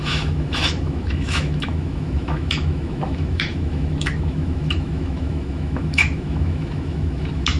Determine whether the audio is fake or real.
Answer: fake